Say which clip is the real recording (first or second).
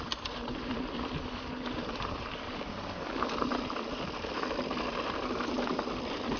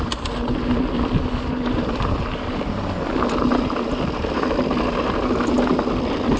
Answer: second